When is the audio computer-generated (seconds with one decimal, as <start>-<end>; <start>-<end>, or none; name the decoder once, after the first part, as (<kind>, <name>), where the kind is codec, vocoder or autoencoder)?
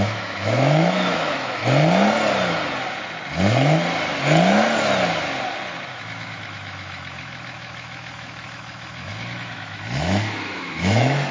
0.0-1.6 (autoencoder, DAC-VAE); 5.9-11.3